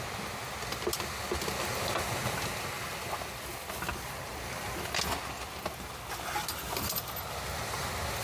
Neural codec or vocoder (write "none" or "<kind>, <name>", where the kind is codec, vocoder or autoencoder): none